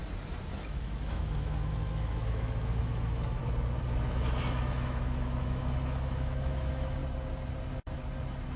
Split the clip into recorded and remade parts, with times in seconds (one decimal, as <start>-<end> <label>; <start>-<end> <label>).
0.0-0.5 recorded; 0.5-3.4 remade; 3.4-4.1 recorded; 4.1-7.0 remade; 7.0-8.6 recorded